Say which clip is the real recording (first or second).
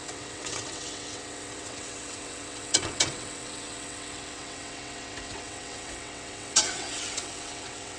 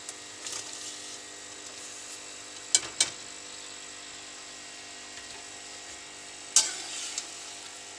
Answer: second